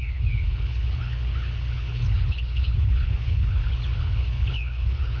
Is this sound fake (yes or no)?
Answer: yes